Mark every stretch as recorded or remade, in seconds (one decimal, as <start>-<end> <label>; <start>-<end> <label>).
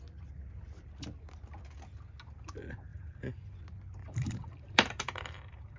0.0-2.9 recorded; 2.9-3.6 remade; 3.6-4.0 recorded; 4.0-5.8 remade